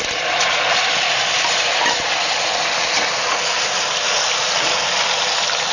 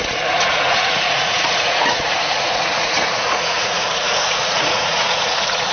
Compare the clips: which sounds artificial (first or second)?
second